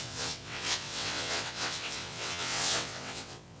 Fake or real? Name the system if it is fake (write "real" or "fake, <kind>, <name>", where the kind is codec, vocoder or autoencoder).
fake, vocoder, WaveNeXt